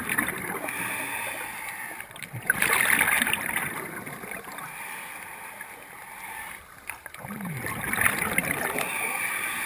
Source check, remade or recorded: remade